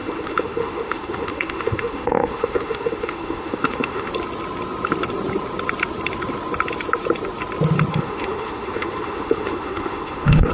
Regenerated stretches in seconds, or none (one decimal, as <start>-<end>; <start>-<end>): 0.0-4.1; 7.9-10.5